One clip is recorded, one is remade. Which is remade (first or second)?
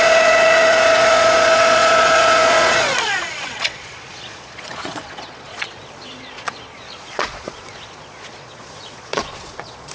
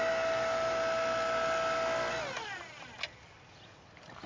first